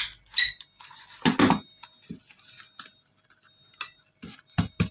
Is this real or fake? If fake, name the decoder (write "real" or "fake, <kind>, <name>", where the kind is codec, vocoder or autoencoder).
real